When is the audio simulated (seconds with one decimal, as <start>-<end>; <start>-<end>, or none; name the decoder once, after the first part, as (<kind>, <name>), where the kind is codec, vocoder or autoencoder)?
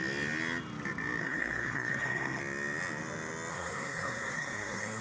1.2-2.4 (codec, SNAC); 3.5-5.0